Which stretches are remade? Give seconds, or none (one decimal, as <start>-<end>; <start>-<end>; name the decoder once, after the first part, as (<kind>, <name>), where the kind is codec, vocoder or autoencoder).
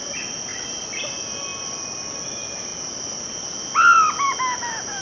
none